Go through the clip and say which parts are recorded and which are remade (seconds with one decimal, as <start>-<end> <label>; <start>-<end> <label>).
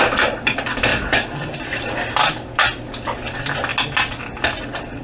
0.0-0.9 recorded; 0.9-1.6 remade; 1.6-5.0 recorded